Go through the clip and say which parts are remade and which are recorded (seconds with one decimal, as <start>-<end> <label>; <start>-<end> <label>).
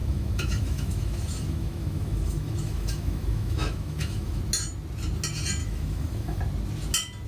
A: 0.0-4.4 remade; 4.4-5.6 recorded; 5.6-6.4 remade; 6.4-7.3 recorded